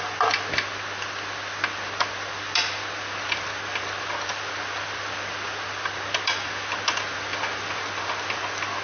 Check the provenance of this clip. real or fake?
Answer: real